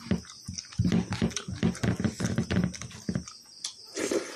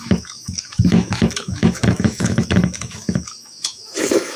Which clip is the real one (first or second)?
first